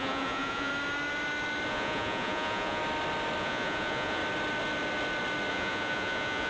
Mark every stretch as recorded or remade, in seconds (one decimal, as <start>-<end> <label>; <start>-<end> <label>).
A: 0.0-0.7 remade; 0.7-1.7 recorded; 1.7-2.8 remade; 2.8-3.4 recorded; 3.4-4.2 remade; 4.2-5.5 recorded; 5.5-6.5 remade